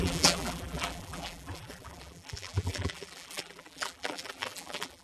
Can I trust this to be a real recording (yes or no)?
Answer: no